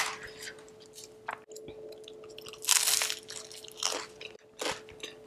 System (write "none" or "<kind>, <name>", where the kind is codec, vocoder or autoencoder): none